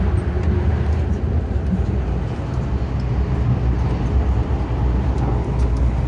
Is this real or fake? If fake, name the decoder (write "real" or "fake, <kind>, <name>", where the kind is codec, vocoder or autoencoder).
real